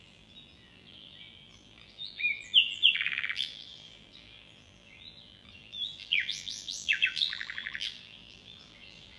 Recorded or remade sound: remade